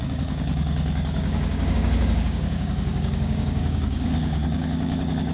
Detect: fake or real fake